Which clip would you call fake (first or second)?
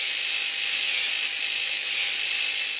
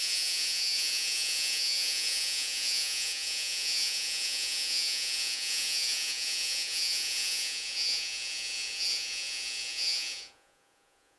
second